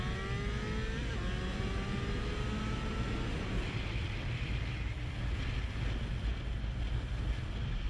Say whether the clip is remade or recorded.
recorded